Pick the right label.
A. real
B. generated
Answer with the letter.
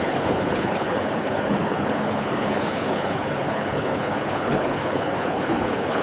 B